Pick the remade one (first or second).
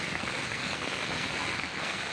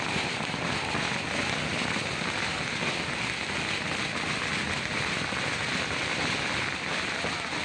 first